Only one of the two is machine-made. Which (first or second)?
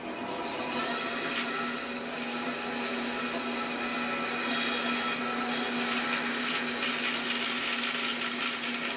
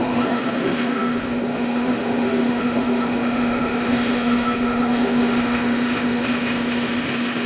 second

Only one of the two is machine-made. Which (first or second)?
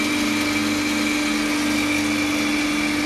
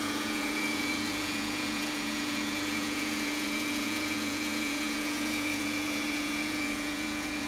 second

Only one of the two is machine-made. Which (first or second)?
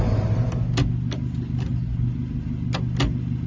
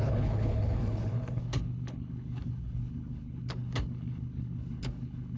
second